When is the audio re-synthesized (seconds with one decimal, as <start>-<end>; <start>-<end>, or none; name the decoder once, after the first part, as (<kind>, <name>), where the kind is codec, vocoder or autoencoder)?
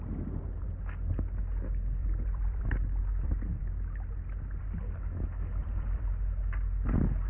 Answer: 2.0-3.6 (vocoder, BigVGAN v2); 5.6-6.1